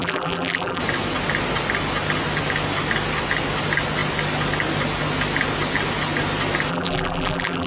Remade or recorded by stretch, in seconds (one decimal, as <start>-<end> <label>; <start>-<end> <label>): 0.0-0.8 remade; 0.8-6.7 recorded; 6.7-7.7 remade